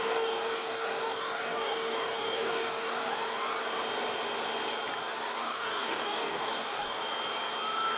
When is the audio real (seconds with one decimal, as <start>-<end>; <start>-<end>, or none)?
3.1-5.4; 7.0-8.0